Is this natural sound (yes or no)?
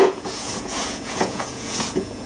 no